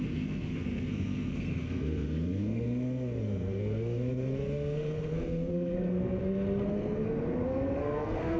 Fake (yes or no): yes